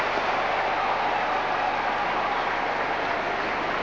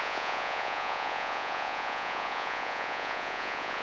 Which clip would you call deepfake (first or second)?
second